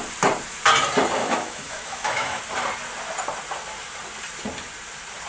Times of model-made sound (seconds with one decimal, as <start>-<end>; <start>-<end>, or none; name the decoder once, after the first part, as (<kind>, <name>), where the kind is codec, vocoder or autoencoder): 1.2-2.4 (autoencoder, DAC-VAE)